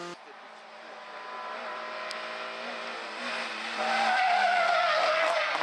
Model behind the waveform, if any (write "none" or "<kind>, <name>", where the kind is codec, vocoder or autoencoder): none